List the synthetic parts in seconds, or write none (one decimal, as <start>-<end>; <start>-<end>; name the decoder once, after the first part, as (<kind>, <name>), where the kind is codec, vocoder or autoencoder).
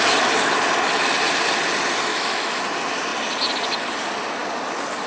2.1-2.6 (autoencoder, DAC-VAE)